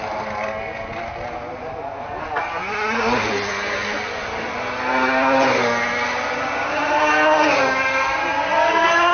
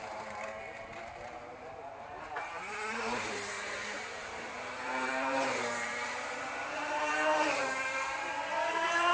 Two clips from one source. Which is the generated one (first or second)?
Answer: second